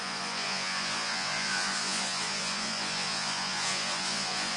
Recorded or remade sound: remade